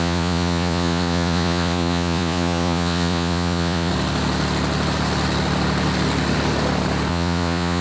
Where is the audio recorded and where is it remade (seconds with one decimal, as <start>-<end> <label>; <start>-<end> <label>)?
0.0-3.9 remade; 3.9-7.1 recorded; 7.1-7.8 remade

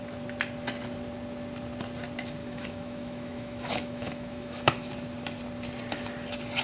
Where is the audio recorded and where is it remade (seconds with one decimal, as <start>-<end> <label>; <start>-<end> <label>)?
0.0-2.4 recorded; 2.4-4.9 remade; 4.9-6.6 recorded

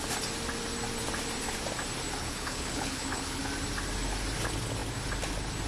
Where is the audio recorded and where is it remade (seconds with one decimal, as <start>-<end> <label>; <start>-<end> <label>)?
0.0-2.2 recorded; 2.2-3.4 remade; 3.4-5.7 recorded